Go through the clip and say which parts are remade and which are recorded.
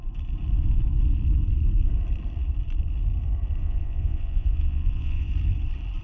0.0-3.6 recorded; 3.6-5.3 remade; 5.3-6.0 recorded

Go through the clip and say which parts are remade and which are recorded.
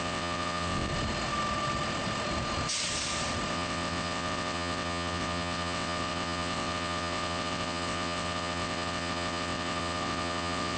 0.0-0.9 remade; 0.9-3.5 recorded; 3.5-10.8 remade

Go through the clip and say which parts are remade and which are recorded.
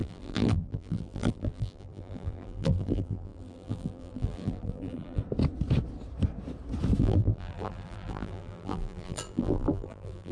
0.0-5.2 remade; 5.2-7.0 recorded; 7.0-10.3 remade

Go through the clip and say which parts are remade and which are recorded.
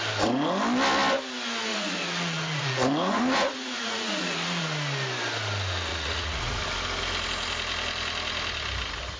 0.0-1.7 recorded; 1.7-4.6 remade; 4.6-5.9 recorded; 5.9-6.6 remade; 6.6-9.2 recorded